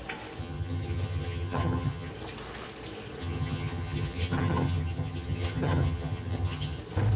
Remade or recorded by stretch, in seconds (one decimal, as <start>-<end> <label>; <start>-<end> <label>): 0.0-0.4 recorded; 0.4-2.1 remade; 2.1-3.2 recorded; 3.2-6.8 remade; 6.8-7.2 recorded